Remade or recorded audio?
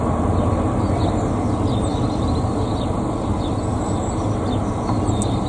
recorded